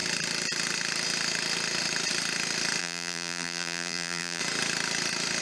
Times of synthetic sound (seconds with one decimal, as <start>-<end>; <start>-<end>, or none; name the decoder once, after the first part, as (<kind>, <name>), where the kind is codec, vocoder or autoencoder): 2.8-4.4 (vocoder, BigVGAN v2)